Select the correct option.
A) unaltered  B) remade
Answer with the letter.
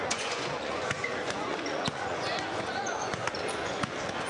B